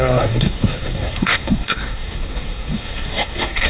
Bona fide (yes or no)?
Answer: no